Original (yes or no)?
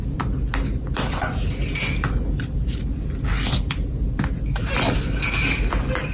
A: yes